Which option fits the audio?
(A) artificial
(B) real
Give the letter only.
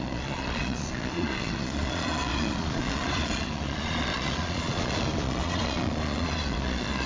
A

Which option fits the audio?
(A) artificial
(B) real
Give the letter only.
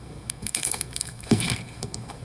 A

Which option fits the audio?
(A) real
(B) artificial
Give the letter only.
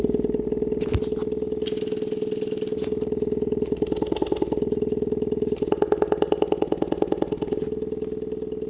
A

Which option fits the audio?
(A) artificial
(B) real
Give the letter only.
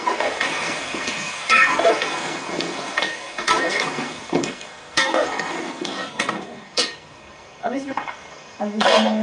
A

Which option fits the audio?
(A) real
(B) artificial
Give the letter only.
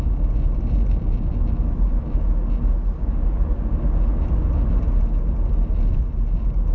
A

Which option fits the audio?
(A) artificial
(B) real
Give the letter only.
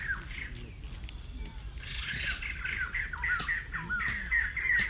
B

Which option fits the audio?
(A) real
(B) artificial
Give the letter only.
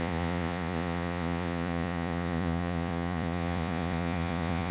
B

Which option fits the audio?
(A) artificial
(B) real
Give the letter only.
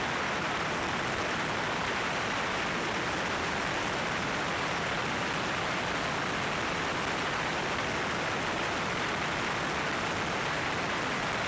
B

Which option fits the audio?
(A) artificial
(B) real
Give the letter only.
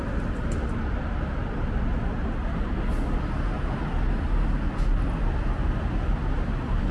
B